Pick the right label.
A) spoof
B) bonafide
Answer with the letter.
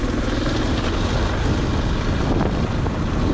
B